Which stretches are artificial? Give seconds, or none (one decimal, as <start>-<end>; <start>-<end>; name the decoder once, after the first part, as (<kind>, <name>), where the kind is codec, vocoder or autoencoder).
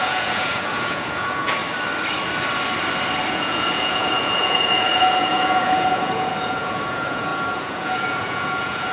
0.0-1.6 (vocoder, Vocos); 3.3-8.9